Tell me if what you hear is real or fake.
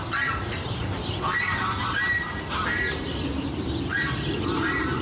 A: real